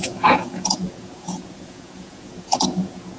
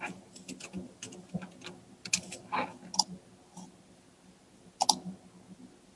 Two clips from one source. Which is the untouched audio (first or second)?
second